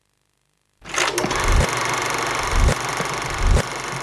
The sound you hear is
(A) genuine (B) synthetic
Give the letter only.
A